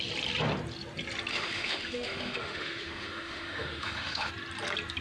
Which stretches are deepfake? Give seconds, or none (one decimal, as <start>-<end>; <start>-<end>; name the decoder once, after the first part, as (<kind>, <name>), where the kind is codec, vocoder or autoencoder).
1.3-4.3 (autoencoder, DAC-VAE)